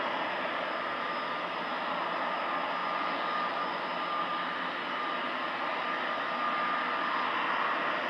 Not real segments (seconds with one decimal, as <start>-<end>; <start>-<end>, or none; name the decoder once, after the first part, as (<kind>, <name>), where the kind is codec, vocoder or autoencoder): 2.8-3.8 (vocoder, Vocos)